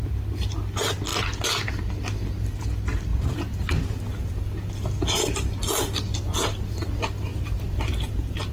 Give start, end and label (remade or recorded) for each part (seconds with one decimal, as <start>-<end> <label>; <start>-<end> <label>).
0.0-3.1 recorded; 3.1-3.7 remade; 3.7-7.3 recorded; 7.3-8.5 remade